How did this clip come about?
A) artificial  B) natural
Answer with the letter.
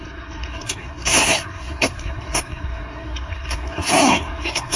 A